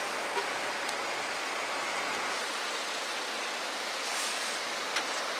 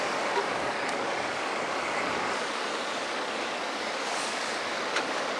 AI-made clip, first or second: second